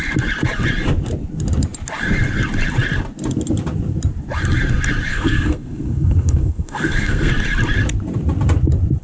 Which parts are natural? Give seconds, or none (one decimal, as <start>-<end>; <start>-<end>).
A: 0.0-5.1; 7.3-9.0